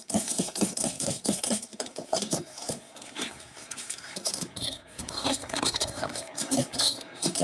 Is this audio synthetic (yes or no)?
yes